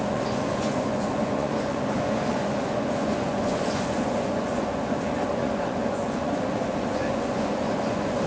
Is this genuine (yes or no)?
no